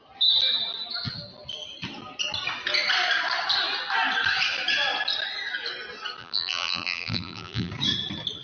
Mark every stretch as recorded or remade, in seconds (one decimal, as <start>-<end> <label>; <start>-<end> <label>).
0.0-6.2 recorded; 6.2-7.7 remade; 7.7-8.4 recorded